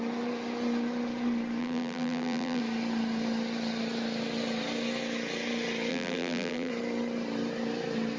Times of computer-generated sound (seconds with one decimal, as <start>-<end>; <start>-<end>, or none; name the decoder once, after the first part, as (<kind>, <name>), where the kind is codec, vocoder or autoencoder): 1.6-2.6 (vocoder, BigVGAN v2); 5.9-6.7